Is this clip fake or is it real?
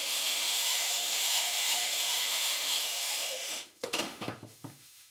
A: fake